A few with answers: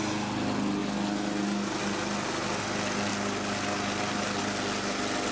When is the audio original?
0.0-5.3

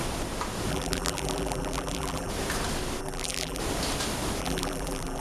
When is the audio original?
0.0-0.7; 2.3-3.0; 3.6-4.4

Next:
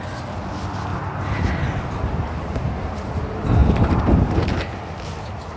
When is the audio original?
0.0-3.6; 4.6-5.6